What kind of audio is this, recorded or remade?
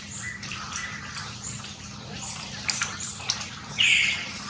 remade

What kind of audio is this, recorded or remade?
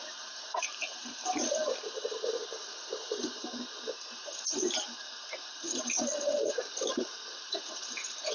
remade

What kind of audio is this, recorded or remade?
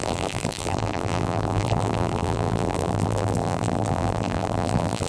remade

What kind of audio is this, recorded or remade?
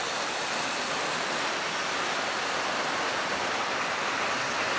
recorded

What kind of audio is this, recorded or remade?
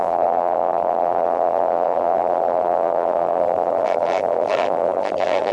remade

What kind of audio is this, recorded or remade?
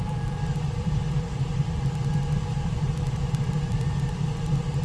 remade